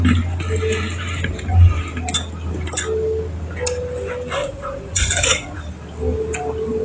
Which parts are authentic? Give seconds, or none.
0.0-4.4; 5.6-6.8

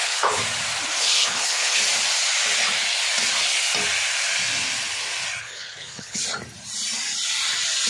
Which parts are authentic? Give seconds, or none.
0.4-1.0; 1.8-5.4; 6.2-7.9

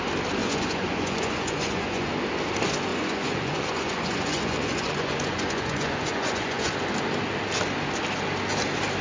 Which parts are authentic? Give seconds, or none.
0.0-0.4; 2.1-2.9; 6.7-9.0

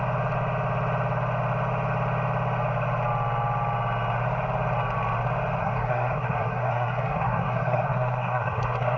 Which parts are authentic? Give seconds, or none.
0.0-5.6

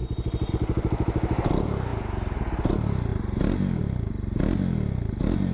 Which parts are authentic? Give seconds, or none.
0.0-3.1; 3.8-5.5

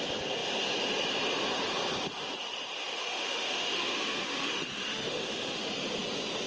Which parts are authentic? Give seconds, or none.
0.0-3.0; 5.7-6.5

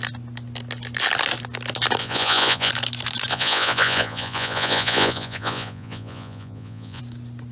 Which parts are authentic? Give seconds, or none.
0.0-2.0; 2.7-3.3; 7.0-7.5

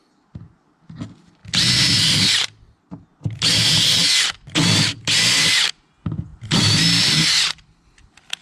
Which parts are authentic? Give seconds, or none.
0.0-8.4